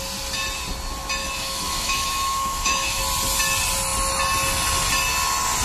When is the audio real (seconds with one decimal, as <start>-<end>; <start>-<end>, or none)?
0.0-1.2; 3.0-5.6